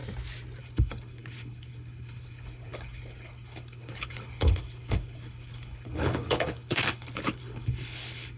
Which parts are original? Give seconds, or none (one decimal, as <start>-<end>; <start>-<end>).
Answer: 0.0-0.6